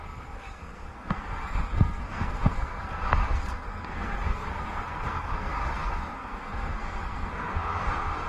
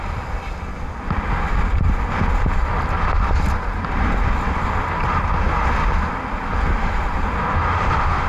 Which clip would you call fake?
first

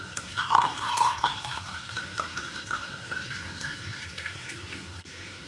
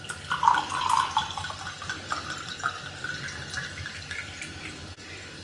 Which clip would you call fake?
first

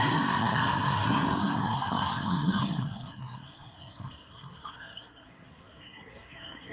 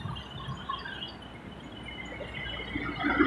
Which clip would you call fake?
first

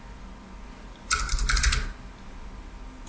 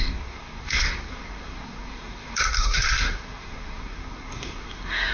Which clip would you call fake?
second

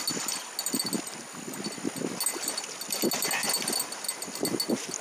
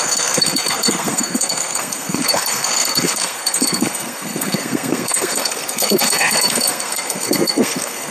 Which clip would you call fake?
second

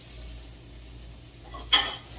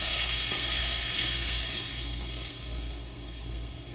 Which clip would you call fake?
second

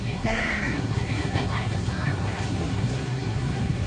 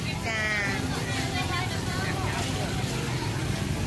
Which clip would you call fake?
first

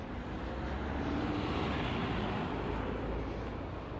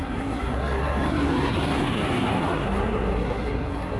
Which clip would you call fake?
second